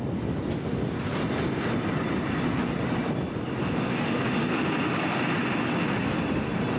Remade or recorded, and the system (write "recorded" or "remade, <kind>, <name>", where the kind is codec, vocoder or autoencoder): recorded